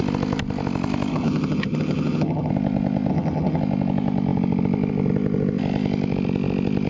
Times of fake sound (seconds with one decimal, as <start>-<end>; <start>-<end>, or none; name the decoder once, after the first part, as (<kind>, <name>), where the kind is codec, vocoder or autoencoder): 1.1-2.5 (vocoder, HiFi-GAN); 3.1-3.6